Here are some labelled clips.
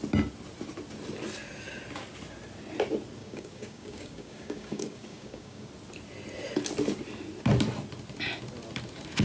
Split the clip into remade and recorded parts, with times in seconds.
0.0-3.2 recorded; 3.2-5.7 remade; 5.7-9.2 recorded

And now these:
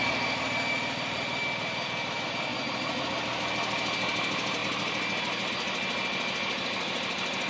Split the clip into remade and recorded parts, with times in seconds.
0.0-2.5 recorded; 2.5-3.1 remade; 3.1-7.5 recorded